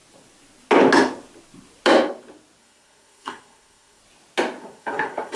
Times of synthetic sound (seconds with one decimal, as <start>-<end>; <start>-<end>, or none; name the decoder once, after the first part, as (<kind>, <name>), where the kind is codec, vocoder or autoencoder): 2.6-4.0 (codec, SNAC); 4.6-5.4